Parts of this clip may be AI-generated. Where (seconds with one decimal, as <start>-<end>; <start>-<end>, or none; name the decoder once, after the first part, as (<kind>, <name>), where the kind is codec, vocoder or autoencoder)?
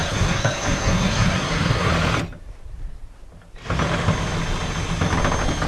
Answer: 0.0-1.9 (codec, SNAC)